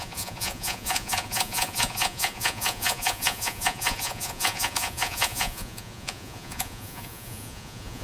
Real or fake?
fake